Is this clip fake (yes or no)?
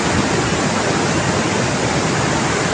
no